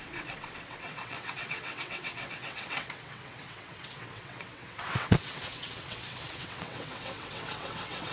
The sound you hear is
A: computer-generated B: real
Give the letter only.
A